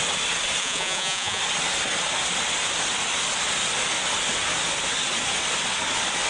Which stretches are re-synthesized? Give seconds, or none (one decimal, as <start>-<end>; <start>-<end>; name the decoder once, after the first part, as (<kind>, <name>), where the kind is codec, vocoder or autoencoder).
0.6-1.4 (vocoder, Vocos)